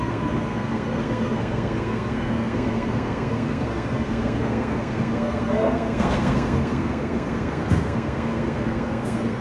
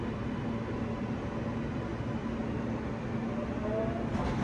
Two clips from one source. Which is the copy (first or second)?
first